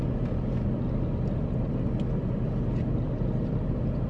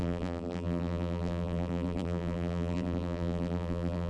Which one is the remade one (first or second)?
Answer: second